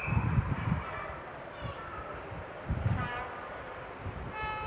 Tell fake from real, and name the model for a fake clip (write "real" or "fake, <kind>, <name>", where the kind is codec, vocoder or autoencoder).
fake, vocoder, BigVGAN v2